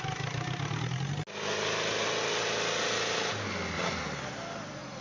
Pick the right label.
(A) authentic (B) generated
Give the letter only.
A